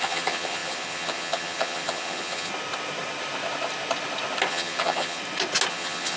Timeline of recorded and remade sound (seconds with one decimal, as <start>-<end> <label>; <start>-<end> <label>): 0.0-2.5 remade; 2.5-4.5 recorded; 4.5-5.2 remade; 5.2-5.7 recorded; 5.7-6.2 remade